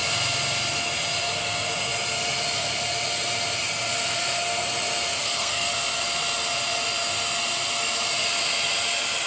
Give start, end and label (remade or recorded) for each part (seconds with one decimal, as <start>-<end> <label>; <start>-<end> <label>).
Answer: 0.0-5.1 recorded; 5.1-5.7 remade; 5.7-9.3 recorded